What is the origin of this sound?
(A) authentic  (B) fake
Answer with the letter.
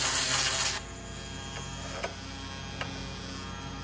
A